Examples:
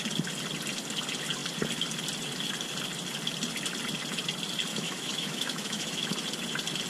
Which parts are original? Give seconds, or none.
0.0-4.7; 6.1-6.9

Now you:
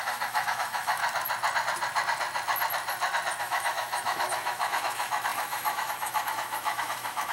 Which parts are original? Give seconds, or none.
1.0-3.4

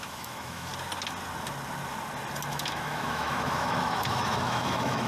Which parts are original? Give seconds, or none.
0.7-2.5

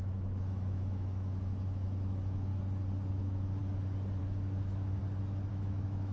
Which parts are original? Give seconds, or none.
2.5-3.1; 3.6-4.2; 5.0-5.5

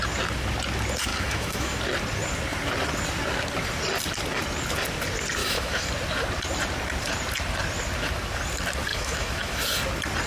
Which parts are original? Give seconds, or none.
0.0-1.1; 1.8-5.4; 5.9-8.9; 9.6-10.3

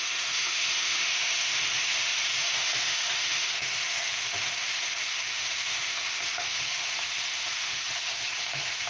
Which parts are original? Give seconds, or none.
none